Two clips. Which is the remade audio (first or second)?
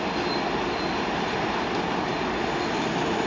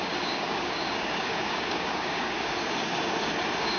second